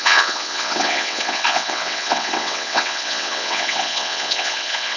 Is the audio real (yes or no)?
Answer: no